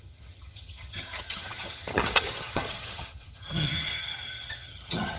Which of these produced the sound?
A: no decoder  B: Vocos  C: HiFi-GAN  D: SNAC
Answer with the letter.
C